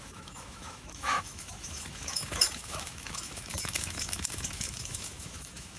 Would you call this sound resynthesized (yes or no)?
yes